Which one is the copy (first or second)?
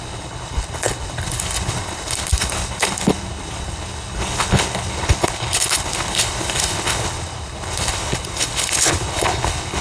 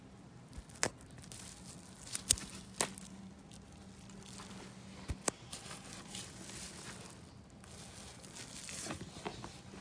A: first